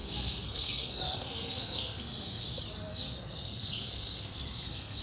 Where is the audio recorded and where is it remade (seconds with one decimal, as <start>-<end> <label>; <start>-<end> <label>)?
0.0-2.4 remade; 2.4-2.9 recorded; 2.9-5.0 remade